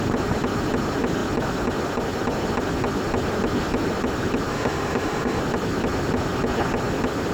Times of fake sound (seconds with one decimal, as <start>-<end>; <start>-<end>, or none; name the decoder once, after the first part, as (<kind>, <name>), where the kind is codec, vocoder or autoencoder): 4.5-5.4 (autoencoder, DAC-VAE)